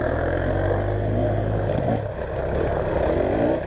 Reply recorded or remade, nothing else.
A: recorded